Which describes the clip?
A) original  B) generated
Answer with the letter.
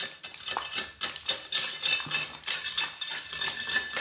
A